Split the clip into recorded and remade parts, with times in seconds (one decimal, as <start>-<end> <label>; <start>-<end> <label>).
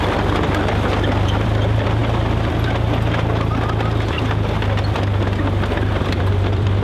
0.0-2.0 remade; 2.0-5.9 recorded; 5.9-6.8 remade